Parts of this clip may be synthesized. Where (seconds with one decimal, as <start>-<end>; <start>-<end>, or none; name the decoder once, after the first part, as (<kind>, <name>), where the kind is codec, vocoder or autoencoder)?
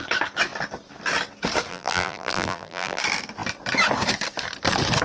1.7-3.0 (vocoder, BigVGAN v2)